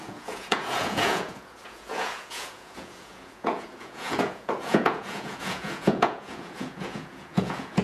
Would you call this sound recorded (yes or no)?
no